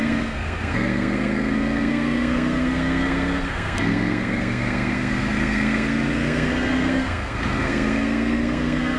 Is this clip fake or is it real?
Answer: fake